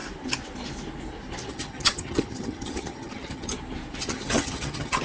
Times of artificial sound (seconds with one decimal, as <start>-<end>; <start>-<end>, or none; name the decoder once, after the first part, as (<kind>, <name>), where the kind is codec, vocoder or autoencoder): 1.5-3.5 (vocoder, HiFi-GAN); 4.0-5.0